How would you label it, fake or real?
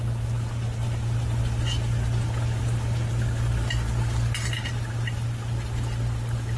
real